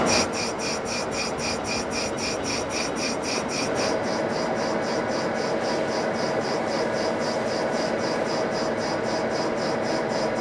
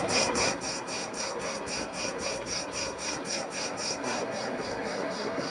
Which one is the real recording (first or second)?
first